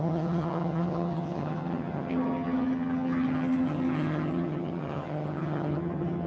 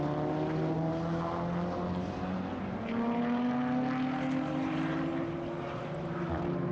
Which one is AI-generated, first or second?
first